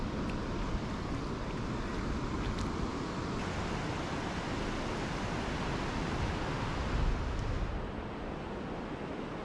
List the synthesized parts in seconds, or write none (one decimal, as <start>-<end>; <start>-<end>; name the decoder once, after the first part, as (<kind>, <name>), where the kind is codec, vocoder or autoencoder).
none